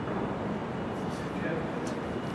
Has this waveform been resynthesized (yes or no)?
no